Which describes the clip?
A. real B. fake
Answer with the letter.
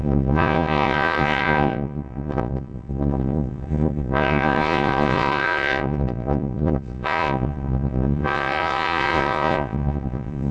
B